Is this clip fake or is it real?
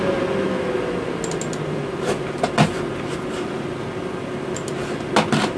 real